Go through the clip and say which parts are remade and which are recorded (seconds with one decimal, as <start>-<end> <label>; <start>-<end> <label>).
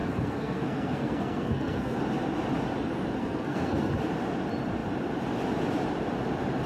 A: 0.0-2.0 remade; 2.0-3.2 recorded; 3.2-3.9 remade; 3.9-6.7 recorded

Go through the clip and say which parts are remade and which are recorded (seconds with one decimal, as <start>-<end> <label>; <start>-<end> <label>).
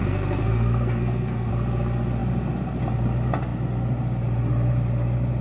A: 0.0-1.5 remade; 1.5-5.4 recorded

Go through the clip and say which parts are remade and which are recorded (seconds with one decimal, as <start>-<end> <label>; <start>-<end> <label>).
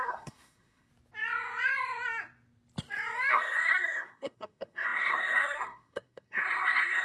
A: 0.0-0.9 remade; 0.9-3.3 recorded; 3.3-7.0 remade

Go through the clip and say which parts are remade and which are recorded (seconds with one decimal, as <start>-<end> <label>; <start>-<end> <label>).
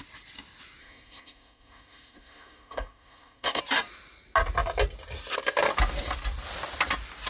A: 0.0-0.8 recorded; 0.8-3.6 remade; 3.6-7.3 recorded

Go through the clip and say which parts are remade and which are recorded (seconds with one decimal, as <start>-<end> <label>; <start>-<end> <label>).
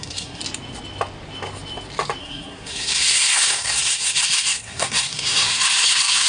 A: 0.0-0.4 remade; 0.4-2.2 recorded; 2.2-6.3 remade